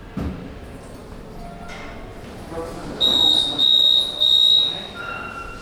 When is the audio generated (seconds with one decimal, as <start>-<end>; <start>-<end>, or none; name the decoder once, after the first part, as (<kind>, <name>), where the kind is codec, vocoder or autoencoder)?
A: none

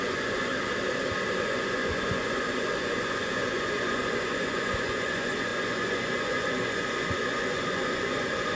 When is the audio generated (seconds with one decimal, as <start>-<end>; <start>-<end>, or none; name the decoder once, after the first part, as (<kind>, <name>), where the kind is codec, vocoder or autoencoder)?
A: 0.0-0.5 (vocoder, Vocos); 1.4-8.5

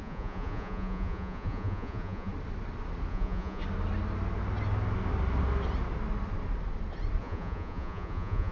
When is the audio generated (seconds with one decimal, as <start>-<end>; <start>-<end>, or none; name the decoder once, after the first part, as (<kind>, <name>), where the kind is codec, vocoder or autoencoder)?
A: 0.0-2.3 (vocoder, Vocos); 3.1-3.6; 7.2-8.5

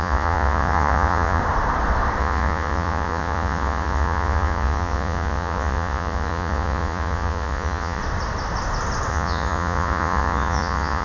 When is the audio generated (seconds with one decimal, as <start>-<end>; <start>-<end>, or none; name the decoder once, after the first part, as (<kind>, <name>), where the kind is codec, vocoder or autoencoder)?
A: 0.0-1.4 (vocoder, Vocos); 2.2-8.0; 9.1-11.0